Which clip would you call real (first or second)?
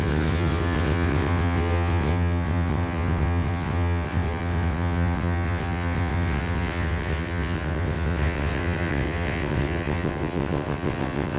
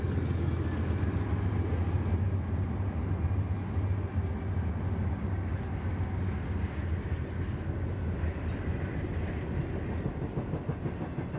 second